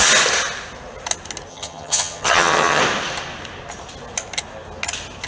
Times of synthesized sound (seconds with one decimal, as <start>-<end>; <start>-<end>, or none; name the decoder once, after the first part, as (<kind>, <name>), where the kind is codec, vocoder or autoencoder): 1.5-2.8 (vocoder, HiFi-GAN)